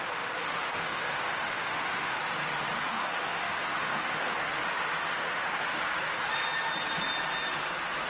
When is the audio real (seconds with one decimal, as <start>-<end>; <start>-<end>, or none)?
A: 2.2-2.9; 4.5-5.1; 5.7-8.1